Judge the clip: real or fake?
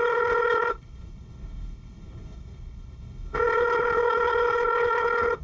fake